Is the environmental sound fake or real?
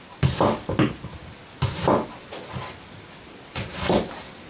real